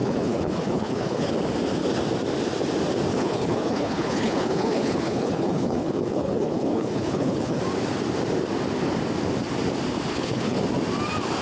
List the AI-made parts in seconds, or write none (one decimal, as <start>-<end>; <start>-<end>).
0.0-1.3; 3.1-7.6; 10.1-10.6